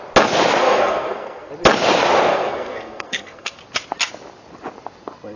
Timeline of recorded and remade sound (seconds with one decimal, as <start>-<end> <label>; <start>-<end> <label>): 0.0-0.6 recorded; 0.6-1.5 remade; 1.5-2.3 recorded; 2.3-3.6 remade; 3.6-5.4 recorded